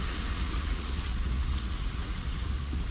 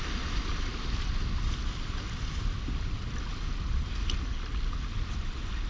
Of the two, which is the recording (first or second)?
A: second